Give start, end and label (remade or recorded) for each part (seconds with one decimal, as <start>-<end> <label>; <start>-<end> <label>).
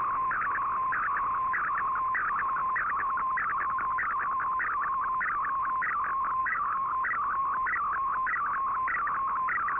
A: 0.0-6.4 recorded; 6.4-6.9 remade; 6.9-9.8 recorded